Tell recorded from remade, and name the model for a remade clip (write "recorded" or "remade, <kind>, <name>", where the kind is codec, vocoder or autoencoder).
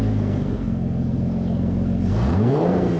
remade, codec, SNAC